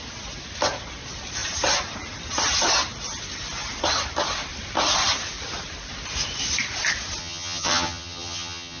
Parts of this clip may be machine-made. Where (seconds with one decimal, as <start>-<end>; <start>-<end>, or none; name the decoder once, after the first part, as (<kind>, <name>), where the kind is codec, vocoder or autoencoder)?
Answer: 7.2-8.8 (vocoder, HiFi-GAN)